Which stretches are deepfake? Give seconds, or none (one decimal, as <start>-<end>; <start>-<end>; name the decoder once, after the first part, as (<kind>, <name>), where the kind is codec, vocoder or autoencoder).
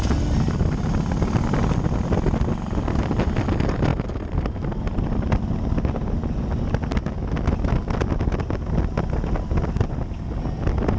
none